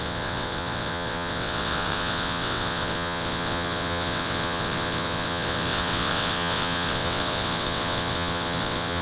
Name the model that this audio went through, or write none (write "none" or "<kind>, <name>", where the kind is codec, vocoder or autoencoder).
vocoder, WaveNeXt